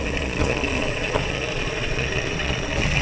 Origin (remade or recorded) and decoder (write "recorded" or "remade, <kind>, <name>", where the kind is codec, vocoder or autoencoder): remade, vocoder, Vocos